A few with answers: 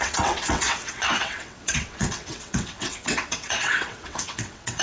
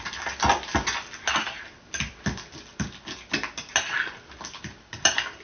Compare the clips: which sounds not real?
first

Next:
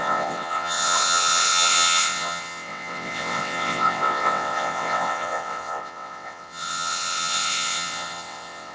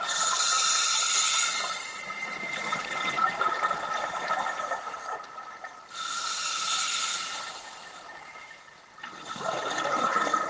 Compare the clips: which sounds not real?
first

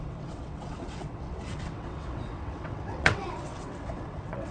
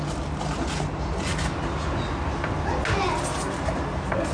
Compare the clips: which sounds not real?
first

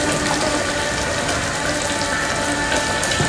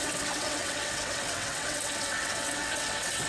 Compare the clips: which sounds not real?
second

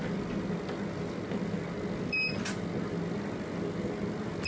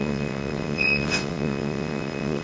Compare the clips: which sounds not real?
second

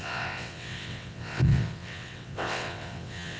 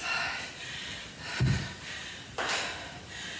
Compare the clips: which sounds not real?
first